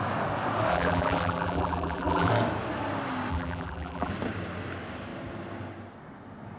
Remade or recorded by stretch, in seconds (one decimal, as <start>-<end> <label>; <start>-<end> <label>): 0.0-0.7 recorded; 0.7-2.3 remade; 2.3-3.3 recorded; 3.3-4.1 remade; 4.1-6.6 recorded